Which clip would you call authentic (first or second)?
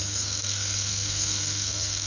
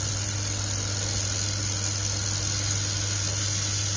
second